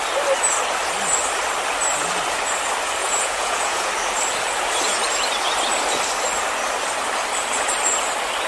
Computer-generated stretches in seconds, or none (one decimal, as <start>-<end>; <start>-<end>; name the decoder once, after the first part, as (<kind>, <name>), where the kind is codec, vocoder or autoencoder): 3.0-3.9 (vocoder, Vocos)